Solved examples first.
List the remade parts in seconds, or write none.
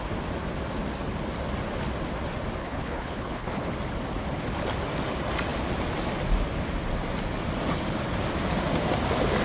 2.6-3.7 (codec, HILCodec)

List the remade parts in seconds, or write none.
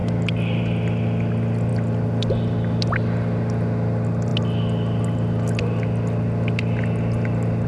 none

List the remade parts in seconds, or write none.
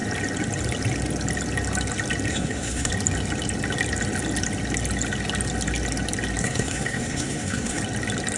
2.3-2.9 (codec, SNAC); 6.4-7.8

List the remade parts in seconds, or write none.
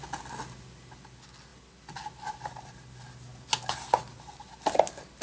none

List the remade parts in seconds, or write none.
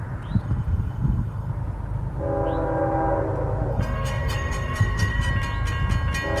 0.4-1.5 (codec, SNAC); 3.7-5.3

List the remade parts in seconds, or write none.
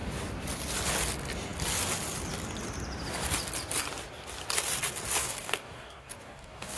5.2-6.8 (codec, DAC)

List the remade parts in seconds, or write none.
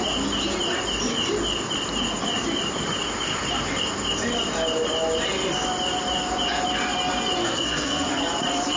7.4-8.2 (codec, SNAC)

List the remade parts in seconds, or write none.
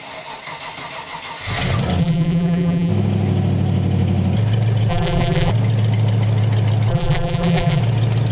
2.0-2.9 (vocoder, BigVGAN v2); 4.9-5.5; 6.9-7.8